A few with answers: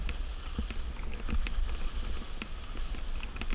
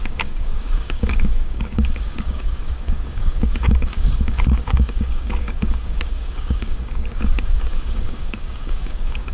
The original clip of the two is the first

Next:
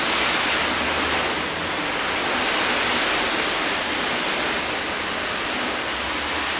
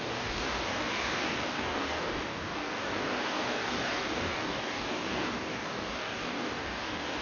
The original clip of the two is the first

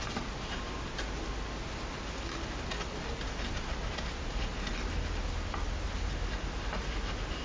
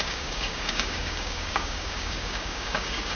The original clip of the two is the first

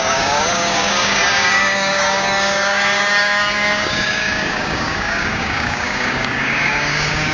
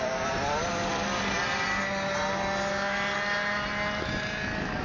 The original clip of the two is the second